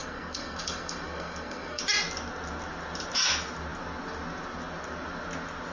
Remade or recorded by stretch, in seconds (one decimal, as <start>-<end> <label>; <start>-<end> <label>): 0.0-1.8 remade; 1.8-5.7 recorded